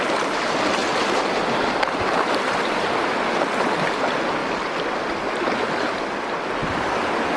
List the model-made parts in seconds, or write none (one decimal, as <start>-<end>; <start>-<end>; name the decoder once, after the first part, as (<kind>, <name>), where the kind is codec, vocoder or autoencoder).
0.8-1.4 (vocoder, BigVGAN v2)